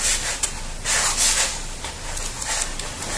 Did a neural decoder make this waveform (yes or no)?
no